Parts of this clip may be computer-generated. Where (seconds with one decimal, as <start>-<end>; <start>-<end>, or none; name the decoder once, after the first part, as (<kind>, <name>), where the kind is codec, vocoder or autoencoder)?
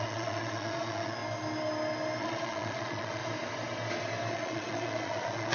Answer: 0.0-1.2 (vocoder, Vocos); 2.2-3.2; 4.3-5.5